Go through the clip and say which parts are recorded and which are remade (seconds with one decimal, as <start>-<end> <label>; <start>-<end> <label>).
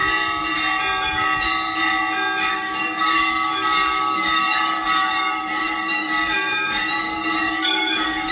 0.0-2.5 recorded; 2.5-8.3 remade